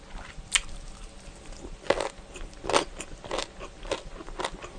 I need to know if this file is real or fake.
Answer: real